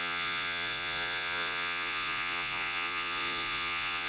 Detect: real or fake fake